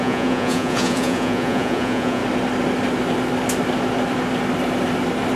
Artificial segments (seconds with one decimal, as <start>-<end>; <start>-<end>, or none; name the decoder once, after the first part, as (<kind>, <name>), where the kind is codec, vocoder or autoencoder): 0.0-2.2 (vocoder, Vocos)